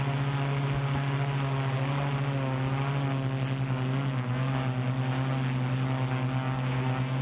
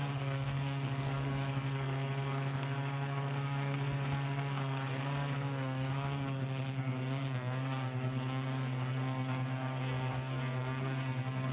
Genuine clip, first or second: first